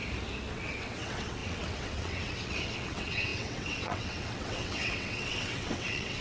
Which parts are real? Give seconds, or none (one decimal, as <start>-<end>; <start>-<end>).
0.0-0.5